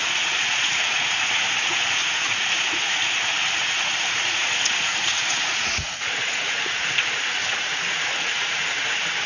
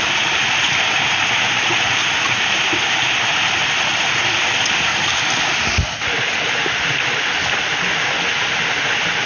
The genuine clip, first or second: second